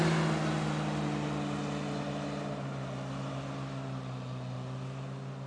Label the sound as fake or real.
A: real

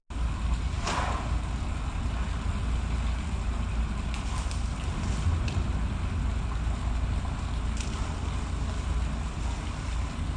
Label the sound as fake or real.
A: real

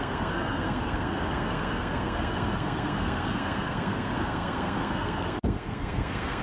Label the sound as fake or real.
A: fake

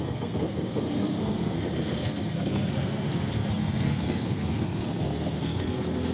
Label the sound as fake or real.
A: fake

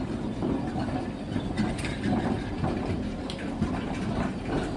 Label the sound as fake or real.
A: real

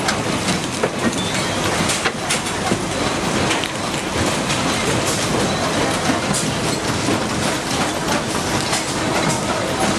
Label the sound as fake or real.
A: real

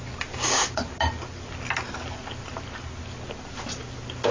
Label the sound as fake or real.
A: real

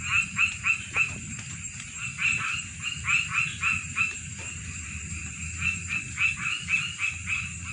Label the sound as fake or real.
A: real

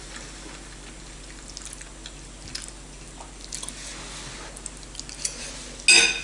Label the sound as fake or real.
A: real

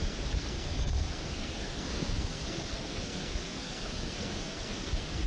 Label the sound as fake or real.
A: fake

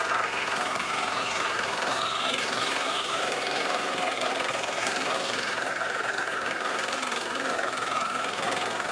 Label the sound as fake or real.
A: fake